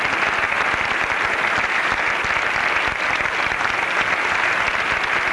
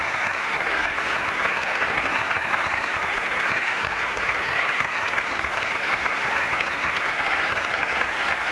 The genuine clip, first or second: first